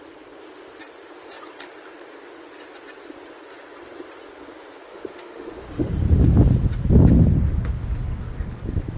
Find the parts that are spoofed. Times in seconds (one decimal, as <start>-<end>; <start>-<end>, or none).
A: 4.9-5.9